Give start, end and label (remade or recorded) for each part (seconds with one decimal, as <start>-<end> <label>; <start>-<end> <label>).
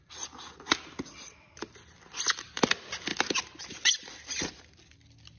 0.0-5.4 recorded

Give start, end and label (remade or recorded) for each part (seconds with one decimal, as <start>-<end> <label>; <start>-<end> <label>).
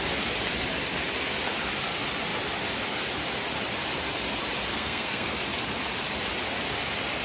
0.0-4.7 recorded; 4.7-5.4 remade; 5.4-7.2 recorded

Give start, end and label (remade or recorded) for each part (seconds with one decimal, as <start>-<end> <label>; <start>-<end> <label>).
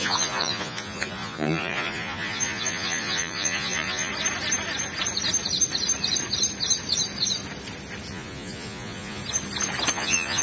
0.0-4.1 remade; 4.1-8.1 recorded; 8.1-9.2 remade; 9.2-9.9 recorded; 9.9-10.4 remade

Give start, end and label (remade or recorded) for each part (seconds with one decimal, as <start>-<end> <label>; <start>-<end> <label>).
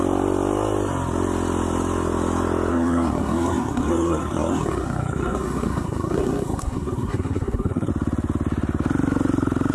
0.0-2.7 recorded; 2.7-7.9 remade; 7.9-9.7 recorded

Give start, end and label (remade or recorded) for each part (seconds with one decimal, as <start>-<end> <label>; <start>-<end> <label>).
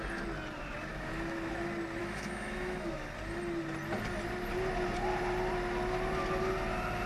0.0-0.9 recorded; 0.9-1.5 remade; 1.5-2.0 recorded; 2.0-3.1 remade; 3.1-7.1 recorded